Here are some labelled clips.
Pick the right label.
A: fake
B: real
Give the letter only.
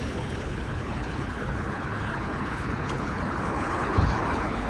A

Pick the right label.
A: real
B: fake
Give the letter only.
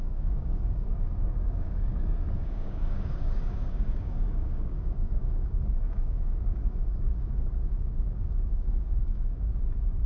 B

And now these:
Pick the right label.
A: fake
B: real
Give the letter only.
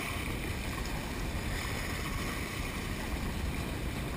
B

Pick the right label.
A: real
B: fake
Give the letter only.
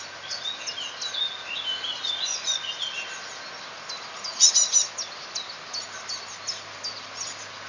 A